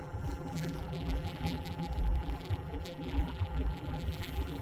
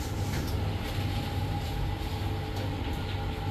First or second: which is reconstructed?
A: first